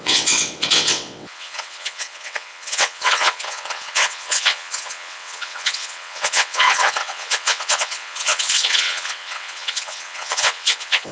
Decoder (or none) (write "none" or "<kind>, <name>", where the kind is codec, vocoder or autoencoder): vocoder, WaveNeXt